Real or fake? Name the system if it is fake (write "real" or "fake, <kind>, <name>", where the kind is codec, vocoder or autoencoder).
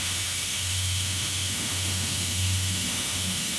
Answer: fake, autoencoder, DAC-VAE